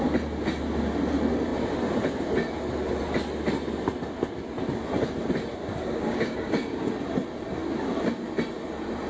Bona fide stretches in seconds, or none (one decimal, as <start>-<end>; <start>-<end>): 0.0-5.6; 6.9-9.1